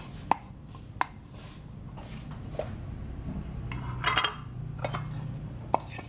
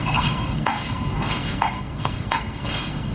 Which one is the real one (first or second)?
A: first